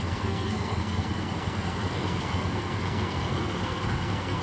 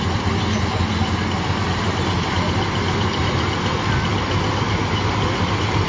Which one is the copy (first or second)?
first